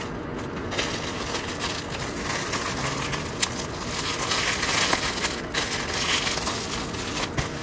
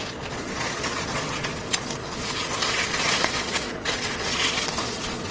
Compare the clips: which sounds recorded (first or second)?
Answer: first